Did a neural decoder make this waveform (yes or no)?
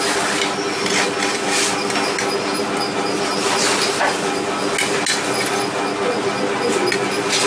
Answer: no